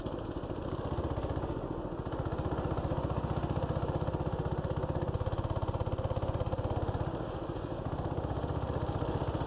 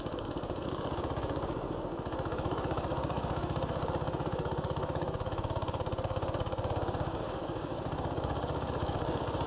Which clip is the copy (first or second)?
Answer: second